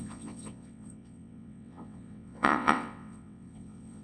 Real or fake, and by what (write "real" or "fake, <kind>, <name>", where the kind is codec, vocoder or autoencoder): fake, vocoder, WaveNeXt